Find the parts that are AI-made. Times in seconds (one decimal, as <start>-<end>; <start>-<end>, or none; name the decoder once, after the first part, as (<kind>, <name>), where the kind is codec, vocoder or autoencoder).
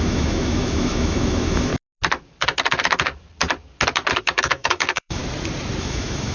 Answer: 0.0-1.7 (autoencoder, DAC-VAE); 4.2-5.2; 5.8-6.3